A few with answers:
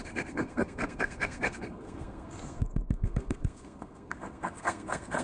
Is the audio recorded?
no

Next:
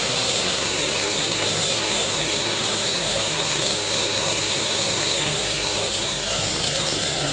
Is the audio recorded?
no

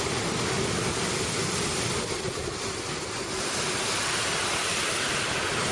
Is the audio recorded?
yes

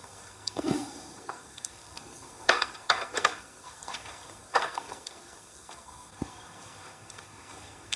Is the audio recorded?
no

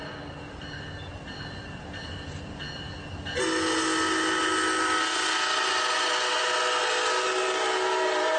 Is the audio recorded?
yes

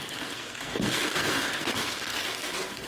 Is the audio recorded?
no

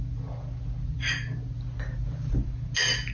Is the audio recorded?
yes